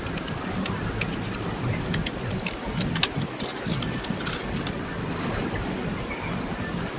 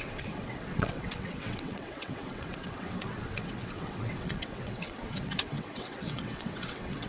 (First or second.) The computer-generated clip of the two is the second